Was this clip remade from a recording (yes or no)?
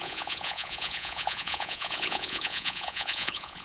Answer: yes